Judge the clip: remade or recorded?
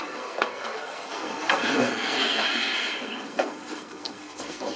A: remade